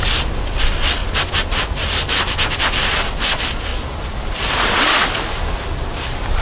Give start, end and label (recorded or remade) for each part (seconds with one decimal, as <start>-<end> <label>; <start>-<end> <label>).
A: 0.0-1.0 remade; 1.0-2.2 recorded; 2.2-3.7 remade; 3.7-6.0 recorded; 6.0-6.4 remade